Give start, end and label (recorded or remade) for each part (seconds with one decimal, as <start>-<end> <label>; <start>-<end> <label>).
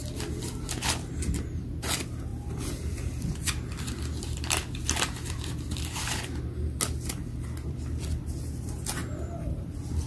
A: 0.0-2.3 recorded; 2.3-6.4 remade; 6.4-10.1 recorded